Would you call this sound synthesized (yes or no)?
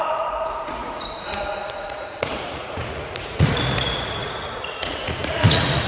yes